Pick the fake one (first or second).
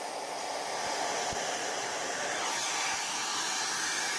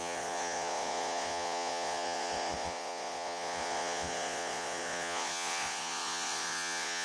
second